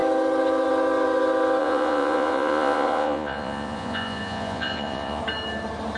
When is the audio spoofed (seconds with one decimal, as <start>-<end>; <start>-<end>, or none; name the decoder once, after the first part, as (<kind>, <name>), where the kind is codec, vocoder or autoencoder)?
1.6-5.2 (vocoder, Vocos)